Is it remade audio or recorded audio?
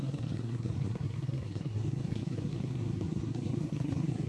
remade